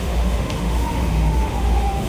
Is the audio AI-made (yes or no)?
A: yes